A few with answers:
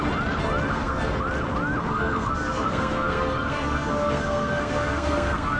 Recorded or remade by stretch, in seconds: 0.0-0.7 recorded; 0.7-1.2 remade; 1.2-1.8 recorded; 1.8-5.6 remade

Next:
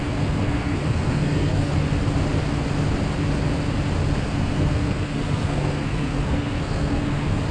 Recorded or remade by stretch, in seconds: 0.0-1.7 remade; 1.7-4.2 recorded; 4.2-7.5 remade